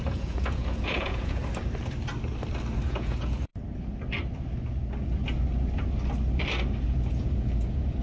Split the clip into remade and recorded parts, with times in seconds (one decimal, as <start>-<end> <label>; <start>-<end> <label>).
0.0-1.4 remade; 1.4-2.8 recorded; 2.8-3.5 remade; 3.5-7.1 recorded; 7.1-8.0 remade